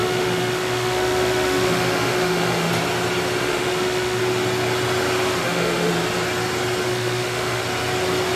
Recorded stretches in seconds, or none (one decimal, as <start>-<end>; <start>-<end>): 2.7-3.4; 4.2-5.4; 5.9-6.9; 7.6-8.4